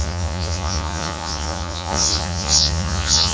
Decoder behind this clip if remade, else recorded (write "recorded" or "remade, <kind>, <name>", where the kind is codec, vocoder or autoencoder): remade, vocoder, Vocos